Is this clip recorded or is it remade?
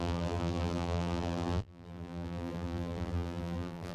remade